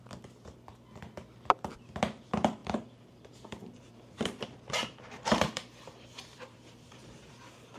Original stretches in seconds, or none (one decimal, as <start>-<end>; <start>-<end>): 0.0-2.6; 7.3-7.8